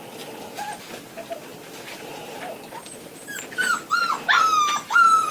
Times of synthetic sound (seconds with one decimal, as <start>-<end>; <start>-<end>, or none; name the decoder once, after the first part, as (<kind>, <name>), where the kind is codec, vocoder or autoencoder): none